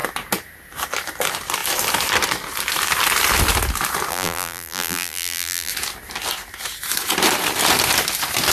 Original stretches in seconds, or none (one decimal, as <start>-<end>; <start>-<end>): 0.0-4.1; 5.7-8.5